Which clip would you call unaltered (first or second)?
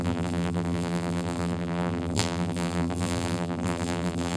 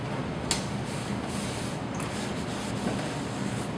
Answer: second